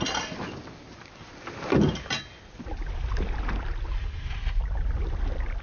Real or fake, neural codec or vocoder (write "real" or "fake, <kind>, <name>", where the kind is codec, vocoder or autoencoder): real